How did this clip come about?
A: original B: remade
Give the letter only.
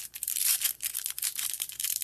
B